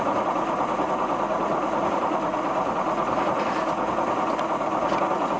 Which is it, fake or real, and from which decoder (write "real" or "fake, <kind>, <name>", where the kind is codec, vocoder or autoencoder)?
fake, vocoder, Vocos